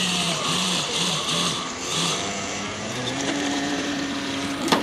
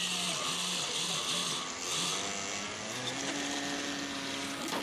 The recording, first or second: second